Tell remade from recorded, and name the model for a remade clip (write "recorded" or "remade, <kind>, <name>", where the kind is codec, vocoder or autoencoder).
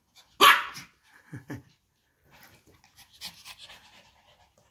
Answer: recorded